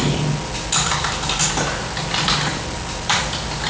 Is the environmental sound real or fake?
real